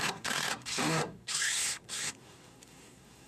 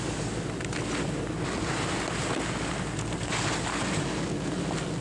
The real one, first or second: second